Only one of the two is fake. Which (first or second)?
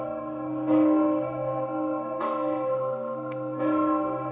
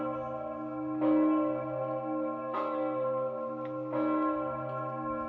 first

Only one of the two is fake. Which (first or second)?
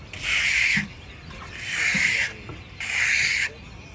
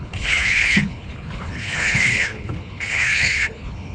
second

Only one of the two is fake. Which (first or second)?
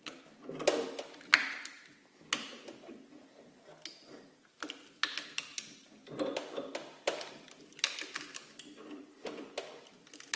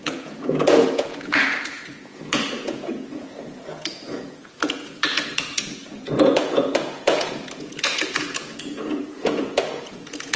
second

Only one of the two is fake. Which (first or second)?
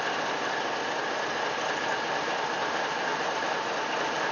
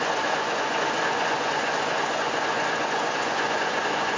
second